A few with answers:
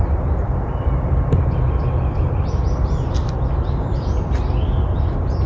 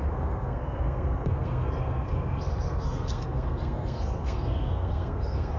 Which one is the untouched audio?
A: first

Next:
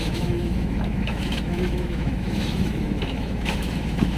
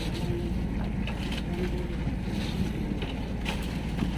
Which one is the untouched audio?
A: second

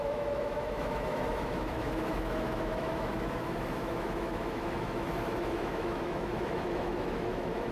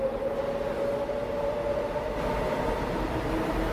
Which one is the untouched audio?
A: second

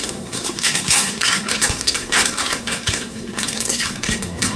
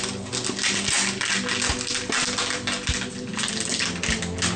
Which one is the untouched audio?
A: second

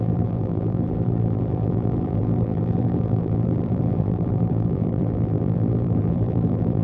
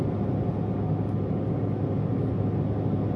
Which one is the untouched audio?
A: second